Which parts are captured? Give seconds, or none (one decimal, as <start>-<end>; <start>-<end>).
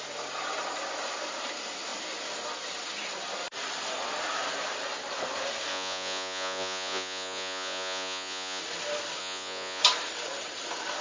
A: 0.0-5.7; 8.6-9.2; 9.8-11.0